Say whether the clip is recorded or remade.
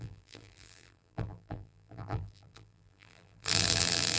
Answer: remade